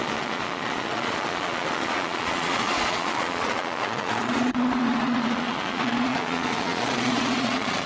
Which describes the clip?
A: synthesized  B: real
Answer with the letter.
A